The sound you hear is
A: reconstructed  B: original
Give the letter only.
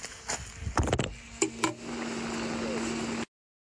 B